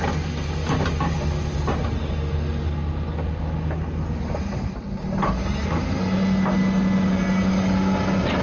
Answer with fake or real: real